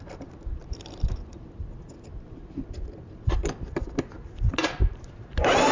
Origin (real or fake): real